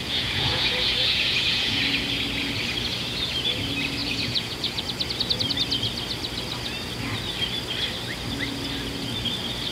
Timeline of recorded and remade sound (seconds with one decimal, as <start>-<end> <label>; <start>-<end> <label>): 0.0-1.8 remade; 1.8-4.0 recorded; 4.0-4.8 remade; 4.8-9.7 recorded